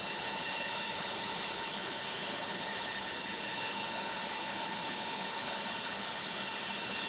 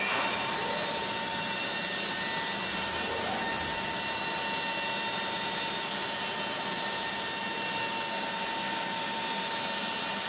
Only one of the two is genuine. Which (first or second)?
second